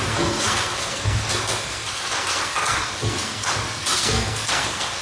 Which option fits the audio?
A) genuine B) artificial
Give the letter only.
B